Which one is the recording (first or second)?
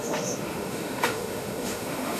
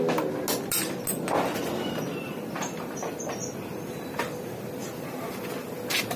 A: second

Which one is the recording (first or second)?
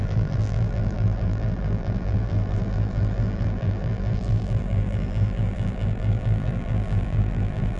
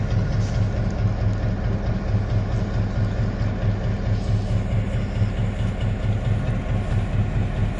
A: second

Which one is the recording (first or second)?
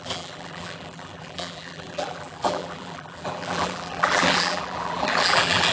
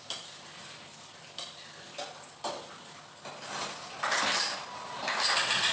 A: second